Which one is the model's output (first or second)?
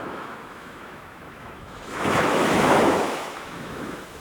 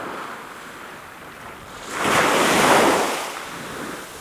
first